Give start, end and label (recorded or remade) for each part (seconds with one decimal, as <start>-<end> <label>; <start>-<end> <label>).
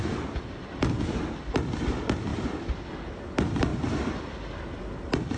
0.0-5.4 recorded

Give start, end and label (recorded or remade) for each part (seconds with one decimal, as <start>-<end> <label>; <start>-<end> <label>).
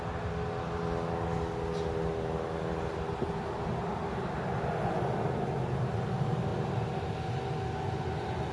0.0-8.5 recorded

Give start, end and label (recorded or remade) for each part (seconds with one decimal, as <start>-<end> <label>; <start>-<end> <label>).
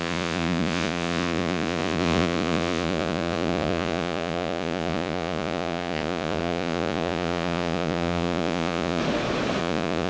0.0-9.0 remade; 9.0-9.6 recorded; 9.6-10.1 remade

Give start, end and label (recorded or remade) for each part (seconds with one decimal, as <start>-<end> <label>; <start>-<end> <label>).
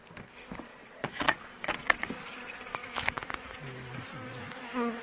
0.0-0.7 recorded; 0.7-2.1 remade; 2.1-5.0 recorded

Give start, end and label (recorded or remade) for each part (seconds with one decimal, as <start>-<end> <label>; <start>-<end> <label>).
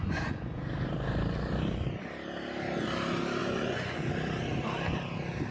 0.0-0.6 remade; 0.6-3.4 recorded; 3.4-4.1 remade; 4.1-5.5 recorded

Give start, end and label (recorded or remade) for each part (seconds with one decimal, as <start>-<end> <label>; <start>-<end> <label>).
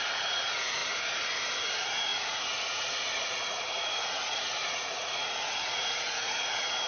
0.0-0.8 remade; 0.8-1.6 recorded; 1.6-6.9 remade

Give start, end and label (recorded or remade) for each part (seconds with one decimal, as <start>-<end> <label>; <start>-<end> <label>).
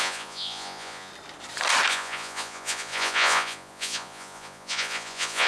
0.0-1.1 remade; 1.1-1.9 recorded; 1.9-5.5 remade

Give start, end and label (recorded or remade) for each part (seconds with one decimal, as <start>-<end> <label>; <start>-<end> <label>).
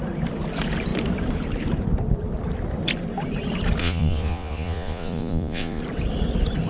0.0-3.8 recorded; 3.8-5.8 remade; 5.8-6.7 recorded